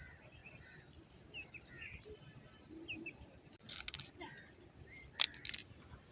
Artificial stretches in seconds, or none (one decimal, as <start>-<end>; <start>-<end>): none